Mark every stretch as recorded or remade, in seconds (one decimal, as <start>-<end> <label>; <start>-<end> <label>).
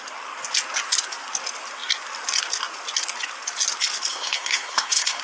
0.0-4.1 recorded; 4.1-5.2 remade